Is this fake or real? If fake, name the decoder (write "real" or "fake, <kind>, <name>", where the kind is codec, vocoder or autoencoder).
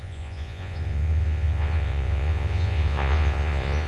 fake, vocoder, Vocos